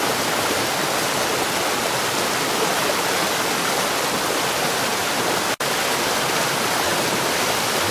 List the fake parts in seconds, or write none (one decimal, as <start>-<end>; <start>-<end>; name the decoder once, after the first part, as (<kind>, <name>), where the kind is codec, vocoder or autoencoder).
none